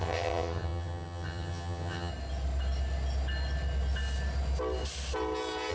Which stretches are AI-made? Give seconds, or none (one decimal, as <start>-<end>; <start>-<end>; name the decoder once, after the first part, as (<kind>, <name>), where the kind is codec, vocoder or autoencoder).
0.0-2.1 (vocoder, HiFi-GAN)